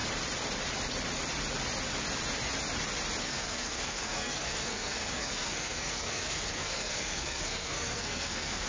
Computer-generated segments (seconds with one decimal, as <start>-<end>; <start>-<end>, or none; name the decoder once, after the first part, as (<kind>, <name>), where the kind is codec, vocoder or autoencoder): 3.2-8.7 (codec, SNAC)